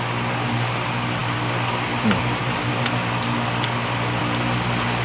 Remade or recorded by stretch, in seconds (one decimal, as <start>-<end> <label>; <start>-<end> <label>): 0.0-5.0 recorded